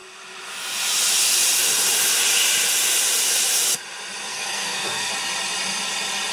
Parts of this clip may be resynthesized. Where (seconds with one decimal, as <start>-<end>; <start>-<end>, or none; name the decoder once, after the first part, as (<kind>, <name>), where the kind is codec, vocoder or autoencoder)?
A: 4.3-5.1 (codec, SNAC)